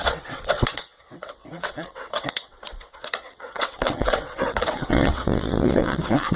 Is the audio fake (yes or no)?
yes